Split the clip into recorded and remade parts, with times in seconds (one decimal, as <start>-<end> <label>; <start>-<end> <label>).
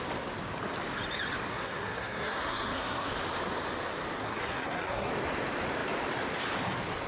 0.0-1.5 recorded; 1.5-3.1 remade; 3.1-4.2 recorded; 4.2-5.1 remade; 5.1-7.1 recorded